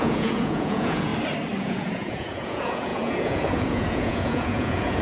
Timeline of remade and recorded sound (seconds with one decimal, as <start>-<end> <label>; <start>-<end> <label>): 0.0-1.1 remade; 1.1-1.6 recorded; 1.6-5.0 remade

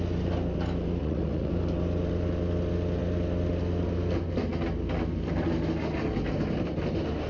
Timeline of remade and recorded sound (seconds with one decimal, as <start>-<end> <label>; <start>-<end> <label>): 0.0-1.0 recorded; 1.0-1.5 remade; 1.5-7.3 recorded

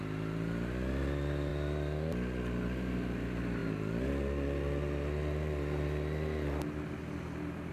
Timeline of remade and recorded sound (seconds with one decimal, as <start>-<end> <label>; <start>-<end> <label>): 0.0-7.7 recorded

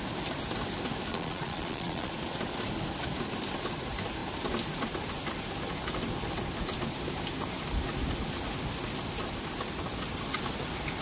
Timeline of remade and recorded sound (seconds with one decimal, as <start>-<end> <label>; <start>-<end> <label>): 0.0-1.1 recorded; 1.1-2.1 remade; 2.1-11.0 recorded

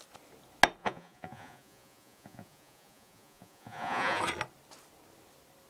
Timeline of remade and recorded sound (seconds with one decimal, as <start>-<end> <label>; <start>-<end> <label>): 0.0-0.8 recorded; 0.8-4.2 remade; 4.2-5.7 recorded

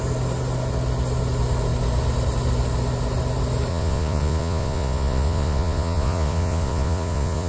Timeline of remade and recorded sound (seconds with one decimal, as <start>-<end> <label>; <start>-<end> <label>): 0.0-3.7 recorded; 3.7-7.5 remade

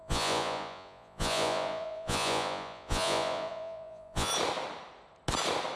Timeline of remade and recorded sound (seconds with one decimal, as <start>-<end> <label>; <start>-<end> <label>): 0.0-4.3 remade; 4.3-5.8 recorded

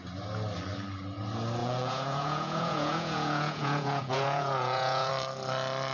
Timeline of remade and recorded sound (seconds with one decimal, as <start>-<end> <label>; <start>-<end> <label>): 0.0-1.6 recorded; 1.6-5.1 remade; 5.1-5.9 recorded